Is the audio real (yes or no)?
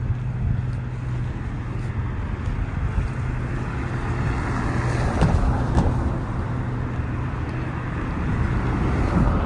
yes